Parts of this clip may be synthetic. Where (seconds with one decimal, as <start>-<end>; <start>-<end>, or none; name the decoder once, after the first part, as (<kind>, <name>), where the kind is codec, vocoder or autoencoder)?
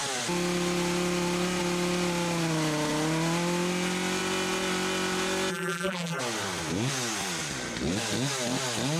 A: 5.5-6.2 (vocoder, BigVGAN v2)